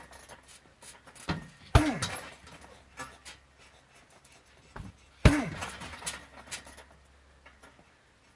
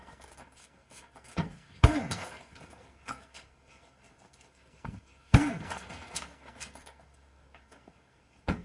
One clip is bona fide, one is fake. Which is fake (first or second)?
second